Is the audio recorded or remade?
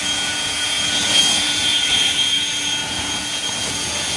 remade